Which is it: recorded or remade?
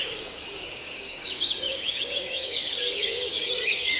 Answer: remade